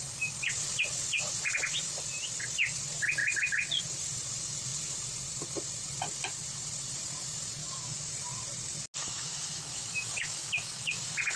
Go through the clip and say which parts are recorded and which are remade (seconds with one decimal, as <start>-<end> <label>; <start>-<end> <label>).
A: 0.0-7.6 recorded; 7.6-8.1 remade; 8.1-9.0 recorded; 9.0-10.9 remade; 10.9-11.4 recorded